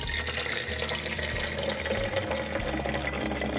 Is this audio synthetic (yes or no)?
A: no